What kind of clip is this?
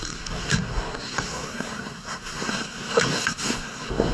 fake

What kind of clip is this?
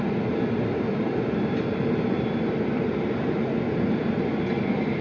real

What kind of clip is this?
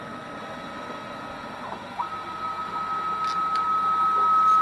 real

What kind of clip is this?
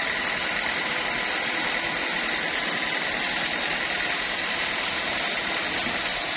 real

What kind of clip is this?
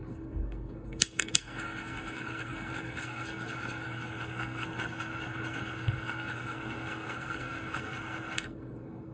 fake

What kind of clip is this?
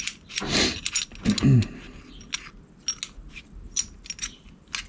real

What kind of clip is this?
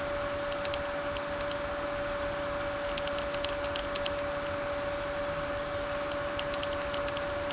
real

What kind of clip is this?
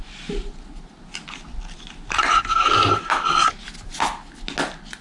real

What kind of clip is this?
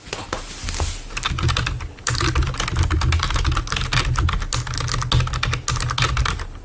real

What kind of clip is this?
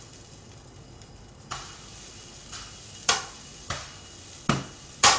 real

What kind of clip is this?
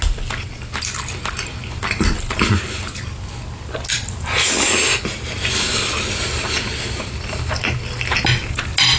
real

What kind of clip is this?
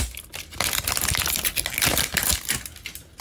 real